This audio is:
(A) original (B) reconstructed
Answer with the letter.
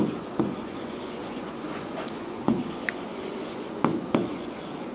B